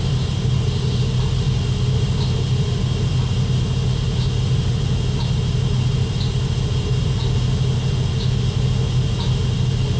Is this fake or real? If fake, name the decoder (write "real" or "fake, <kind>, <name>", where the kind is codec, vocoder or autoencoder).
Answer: real